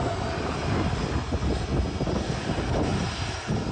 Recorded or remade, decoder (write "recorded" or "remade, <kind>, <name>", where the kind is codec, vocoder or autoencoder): recorded